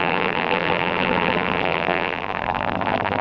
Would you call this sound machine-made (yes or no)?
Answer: yes